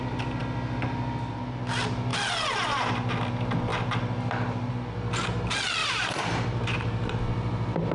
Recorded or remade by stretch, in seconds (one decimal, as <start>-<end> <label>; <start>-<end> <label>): 0.0-5.8 recorded; 5.8-7.1 remade; 7.1-7.9 recorded

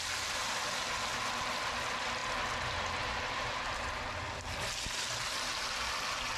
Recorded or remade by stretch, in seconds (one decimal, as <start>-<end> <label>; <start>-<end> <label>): 0.0-6.4 recorded

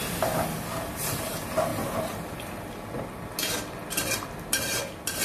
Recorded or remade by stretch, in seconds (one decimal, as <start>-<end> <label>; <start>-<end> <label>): 0.0-5.2 recorded

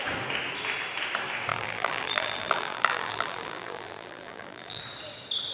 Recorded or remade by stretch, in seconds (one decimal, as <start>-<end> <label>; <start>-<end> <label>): 0.0-1.5 recorded; 1.5-4.8 remade; 4.8-5.5 recorded

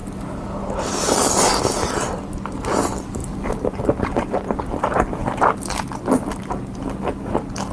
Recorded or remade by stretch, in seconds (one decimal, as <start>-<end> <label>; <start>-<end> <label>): 0.0-0.7 remade; 0.7-3.2 recorded; 3.2-4.6 remade; 4.6-5.2 recorded; 5.2-6.4 remade; 6.4-7.7 recorded

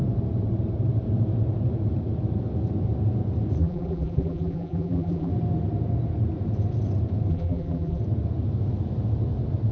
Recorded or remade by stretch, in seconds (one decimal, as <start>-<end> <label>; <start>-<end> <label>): 0.0-3.6 recorded; 3.6-5.3 remade; 5.3-7.3 recorded; 7.3-8.0 remade; 8.0-9.7 recorded

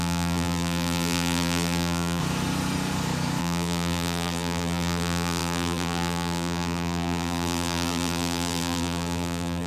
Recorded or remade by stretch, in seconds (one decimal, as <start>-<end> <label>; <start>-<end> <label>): 0.0-2.2 remade; 2.2-3.4 recorded; 3.4-9.7 remade

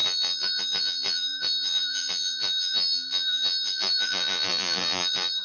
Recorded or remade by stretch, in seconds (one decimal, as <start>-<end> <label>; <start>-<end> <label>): 0.0-5.4 remade